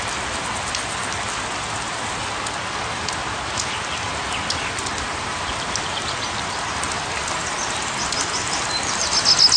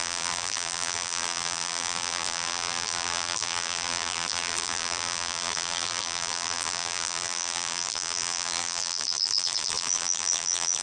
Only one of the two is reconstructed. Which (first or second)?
second